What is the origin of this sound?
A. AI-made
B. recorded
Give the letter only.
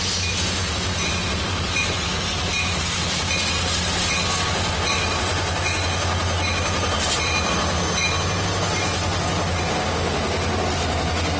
B